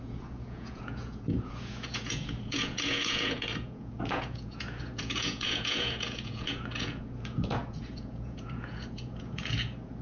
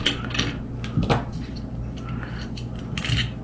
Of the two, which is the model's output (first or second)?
first